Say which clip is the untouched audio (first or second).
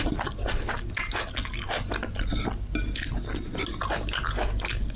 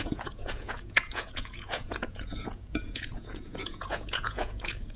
first